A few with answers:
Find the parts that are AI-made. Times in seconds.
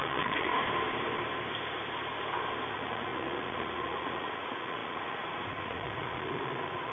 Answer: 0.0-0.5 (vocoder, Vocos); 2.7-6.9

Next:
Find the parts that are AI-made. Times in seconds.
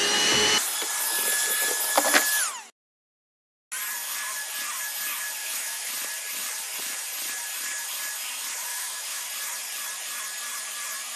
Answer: 5.4-5.9 (autoencoder, DAC-VAE); 8.7-9.2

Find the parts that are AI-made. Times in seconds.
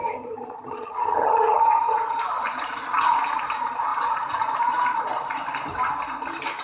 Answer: 0.0-2.2 (vocoder, HiFi-GAN)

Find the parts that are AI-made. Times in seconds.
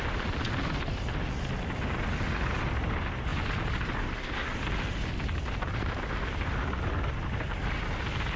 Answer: none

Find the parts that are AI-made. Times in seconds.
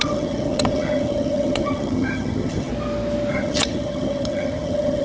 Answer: 0.0-2.7 (vocoder, HiFi-GAN); 3.3-5.0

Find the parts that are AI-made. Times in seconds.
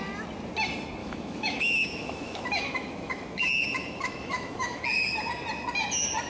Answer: 1.0-4.8 (autoencoder, DAC-VAE)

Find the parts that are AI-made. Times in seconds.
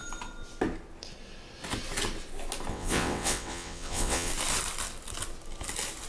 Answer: 2.7-4.3 (vocoder, WaveNeXt)